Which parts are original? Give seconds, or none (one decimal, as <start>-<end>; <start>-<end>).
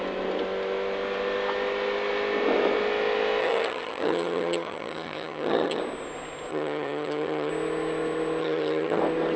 0.0-3.4; 5.8-6.5; 7.5-8.4; 9.0-9.4